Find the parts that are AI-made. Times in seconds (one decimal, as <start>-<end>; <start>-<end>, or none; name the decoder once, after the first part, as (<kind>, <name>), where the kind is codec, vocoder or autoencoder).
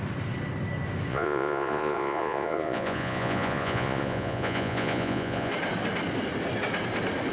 1.1-5.5 (vocoder, Vocos)